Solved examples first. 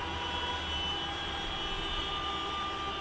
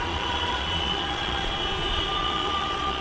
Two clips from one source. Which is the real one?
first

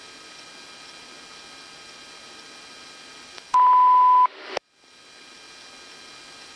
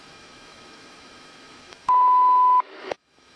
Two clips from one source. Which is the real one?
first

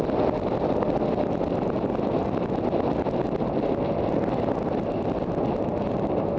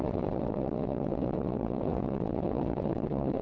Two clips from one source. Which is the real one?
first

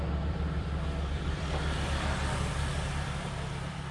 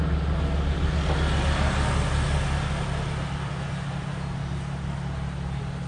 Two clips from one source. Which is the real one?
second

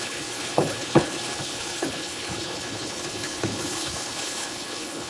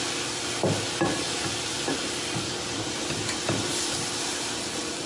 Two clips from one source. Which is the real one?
second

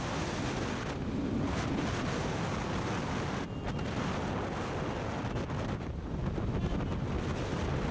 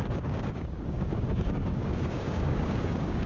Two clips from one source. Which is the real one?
first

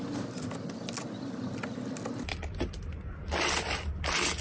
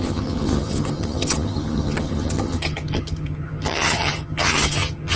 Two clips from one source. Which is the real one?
first